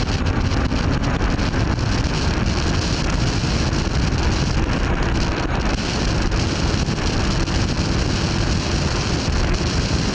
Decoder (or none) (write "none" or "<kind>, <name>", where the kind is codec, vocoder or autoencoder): none